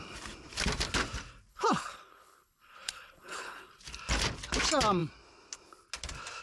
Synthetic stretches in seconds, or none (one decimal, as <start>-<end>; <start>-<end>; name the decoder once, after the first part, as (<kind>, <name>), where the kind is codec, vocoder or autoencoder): 1.5-3.8 (codec, HILCodec)